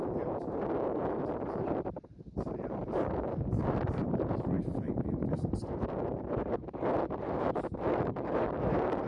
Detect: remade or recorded remade